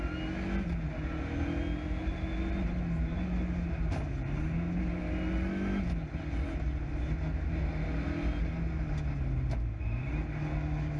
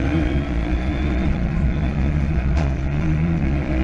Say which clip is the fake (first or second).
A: second